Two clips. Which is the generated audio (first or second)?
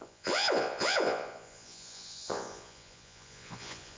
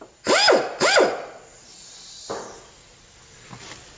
first